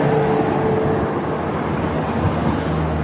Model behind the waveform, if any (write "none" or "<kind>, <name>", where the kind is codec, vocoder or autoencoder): none